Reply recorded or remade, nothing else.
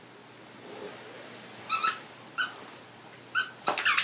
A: recorded